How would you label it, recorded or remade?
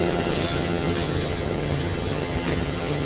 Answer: remade